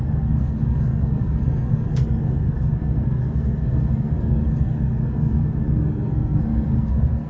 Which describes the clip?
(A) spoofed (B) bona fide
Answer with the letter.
A